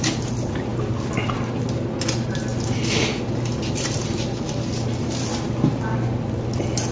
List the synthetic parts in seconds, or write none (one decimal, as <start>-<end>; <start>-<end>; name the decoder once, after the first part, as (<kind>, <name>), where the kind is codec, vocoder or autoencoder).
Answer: none